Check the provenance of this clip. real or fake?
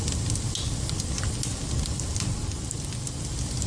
real